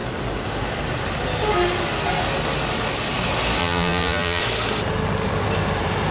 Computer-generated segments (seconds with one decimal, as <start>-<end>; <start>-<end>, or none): 3.6-4.4